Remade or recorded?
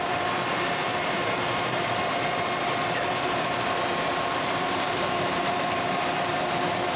remade